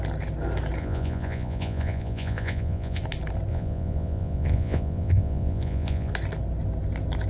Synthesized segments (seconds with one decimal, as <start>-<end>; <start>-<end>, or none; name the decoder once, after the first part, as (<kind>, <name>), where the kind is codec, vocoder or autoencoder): 0.8-3.0 (vocoder, Vocos); 3.5-6.1